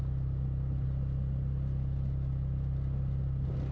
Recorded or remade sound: recorded